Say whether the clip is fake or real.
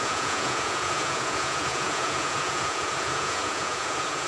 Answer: fake